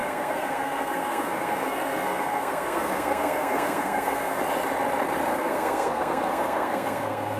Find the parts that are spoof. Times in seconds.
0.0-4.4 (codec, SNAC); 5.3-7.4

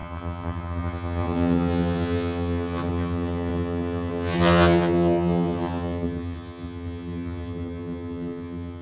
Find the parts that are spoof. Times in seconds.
0.0-8.8 (vocoder, HiFi-GAN)

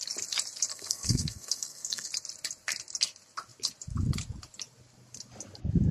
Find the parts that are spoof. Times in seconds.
0.7-2.1 (codec, SNAC)

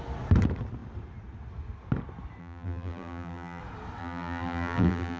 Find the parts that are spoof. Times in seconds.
2.4-3.6 (vocoder, BigVGAN v2); 4.0-5.2